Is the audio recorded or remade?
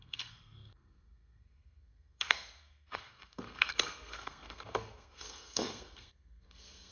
remade